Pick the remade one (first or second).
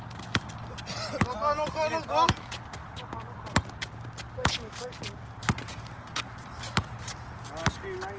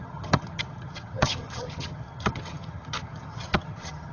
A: second